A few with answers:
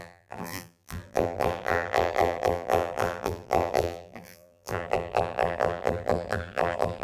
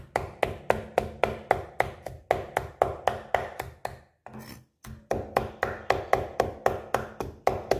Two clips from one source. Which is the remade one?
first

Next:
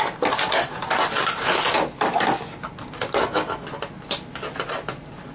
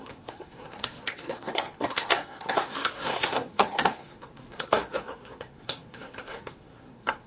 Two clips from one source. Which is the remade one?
second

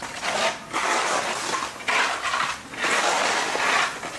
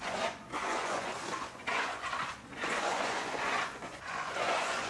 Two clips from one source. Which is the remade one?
second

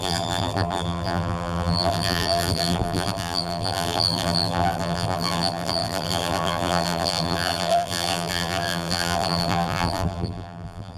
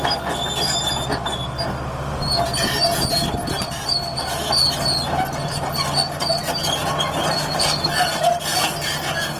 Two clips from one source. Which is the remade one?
first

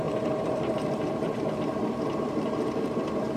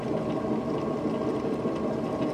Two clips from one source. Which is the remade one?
first